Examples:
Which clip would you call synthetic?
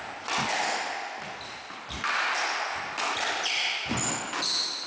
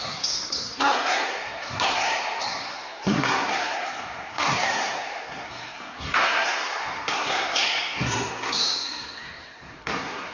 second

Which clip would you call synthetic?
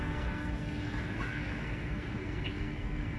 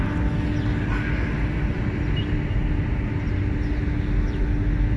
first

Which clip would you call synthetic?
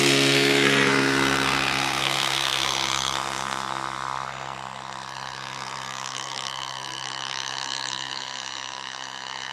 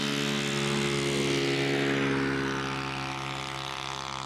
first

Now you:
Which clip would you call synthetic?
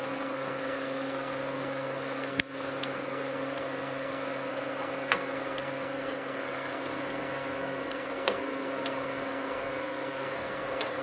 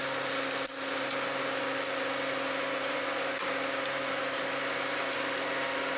first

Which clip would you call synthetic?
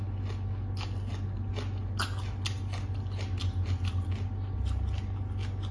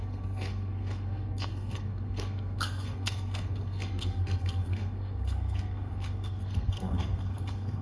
second